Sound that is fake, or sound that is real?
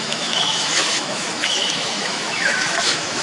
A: fake